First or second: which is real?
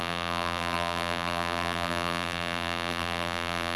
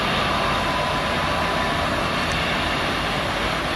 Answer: second